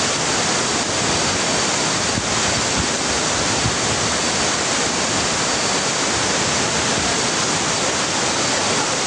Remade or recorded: recorded